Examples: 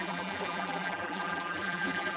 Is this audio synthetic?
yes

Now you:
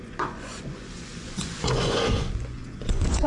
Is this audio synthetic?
yes